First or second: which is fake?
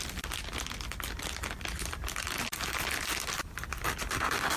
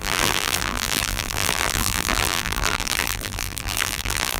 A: second